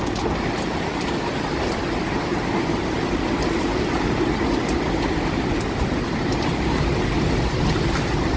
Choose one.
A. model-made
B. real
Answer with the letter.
B